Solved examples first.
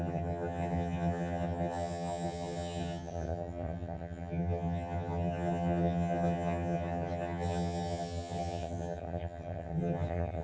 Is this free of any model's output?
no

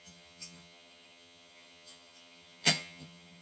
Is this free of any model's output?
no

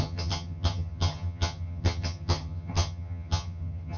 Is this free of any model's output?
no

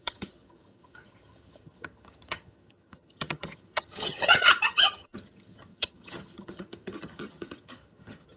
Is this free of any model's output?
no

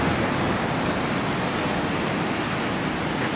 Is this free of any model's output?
yes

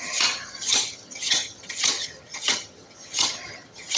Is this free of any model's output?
no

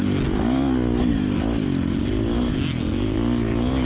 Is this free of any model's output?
yes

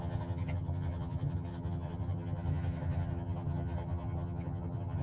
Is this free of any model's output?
no